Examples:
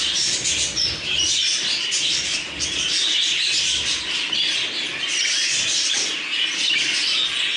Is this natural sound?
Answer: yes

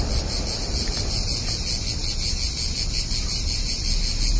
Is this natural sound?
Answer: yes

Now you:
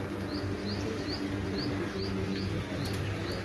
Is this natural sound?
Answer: yes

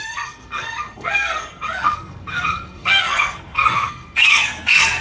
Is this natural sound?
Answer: no